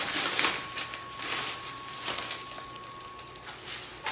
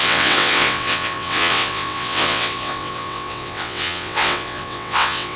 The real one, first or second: first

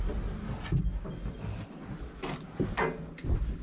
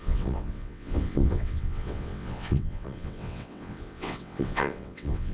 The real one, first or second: first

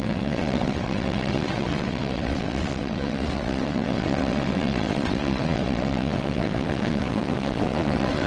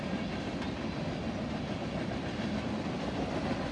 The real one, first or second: second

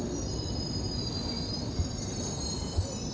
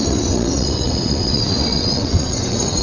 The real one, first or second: first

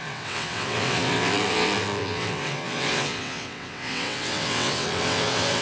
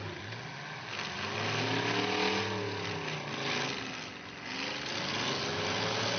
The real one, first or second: second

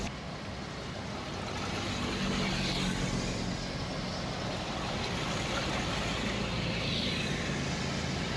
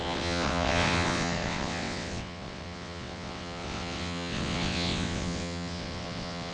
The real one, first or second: first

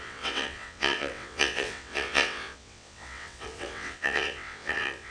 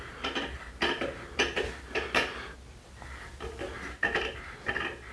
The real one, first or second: second